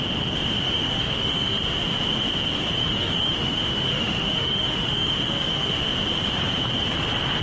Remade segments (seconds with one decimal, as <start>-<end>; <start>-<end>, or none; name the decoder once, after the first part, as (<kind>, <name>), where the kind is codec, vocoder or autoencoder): 0.6-1.6 (autoencoder, DAC-VAE); 2.8-5.9